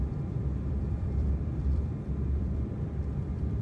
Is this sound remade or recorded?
remade